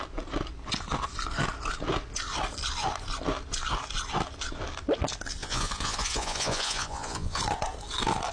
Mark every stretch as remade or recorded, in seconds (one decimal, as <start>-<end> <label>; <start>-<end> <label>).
0.0-5.4 recorded; 5.4-7.4 remade; 7.4-8.3 recorded